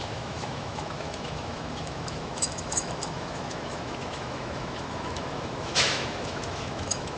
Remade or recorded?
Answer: remade